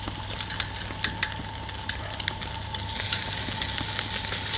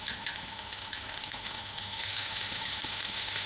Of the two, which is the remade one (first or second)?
second